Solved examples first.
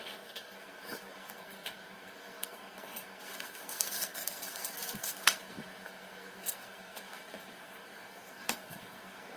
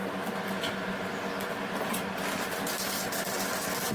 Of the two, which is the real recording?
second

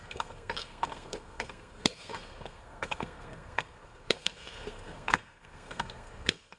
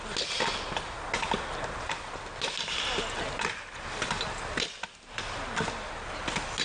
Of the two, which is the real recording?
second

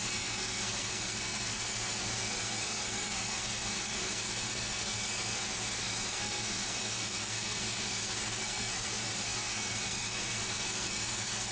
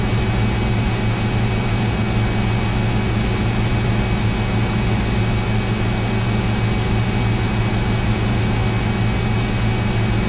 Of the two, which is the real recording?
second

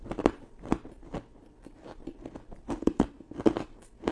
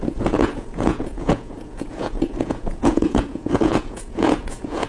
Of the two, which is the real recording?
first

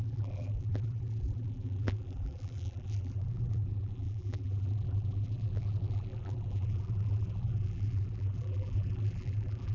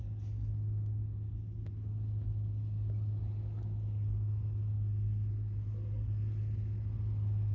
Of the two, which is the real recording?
second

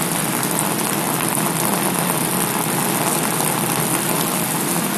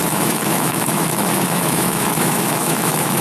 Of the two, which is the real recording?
first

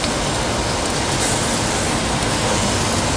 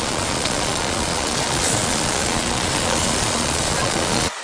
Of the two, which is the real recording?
first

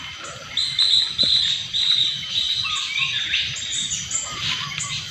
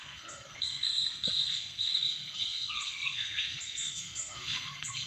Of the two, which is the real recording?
first